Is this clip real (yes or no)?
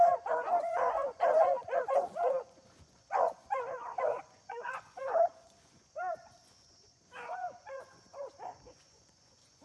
no